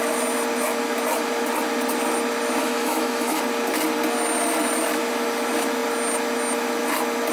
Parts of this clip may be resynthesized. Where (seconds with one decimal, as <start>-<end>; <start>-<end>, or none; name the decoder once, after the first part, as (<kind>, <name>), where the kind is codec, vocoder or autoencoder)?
2.6-3.4 (autoencoder, DAC-VAE)